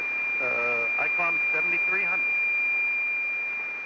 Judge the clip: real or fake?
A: real